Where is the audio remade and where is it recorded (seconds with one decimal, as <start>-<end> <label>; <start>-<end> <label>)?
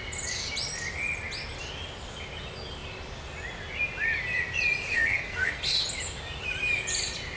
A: 0.0-4.9 recorded; 4.9-5.6 remade; 5.6-7.4 recorded